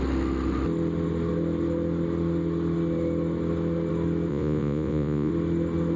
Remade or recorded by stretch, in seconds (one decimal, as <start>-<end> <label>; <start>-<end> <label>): 0.0-4.3 recorded; 4.3-5.3 remade; 5.3-6.0 recorded